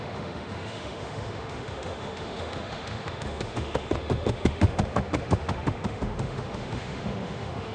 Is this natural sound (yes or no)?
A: no